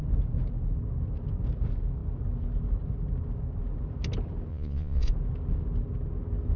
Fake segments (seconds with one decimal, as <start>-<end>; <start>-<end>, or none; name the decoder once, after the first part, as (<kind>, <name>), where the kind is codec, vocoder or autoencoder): 4.5-5.1 (vocoder, Vocos)